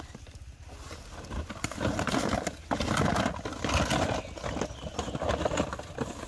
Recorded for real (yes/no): yes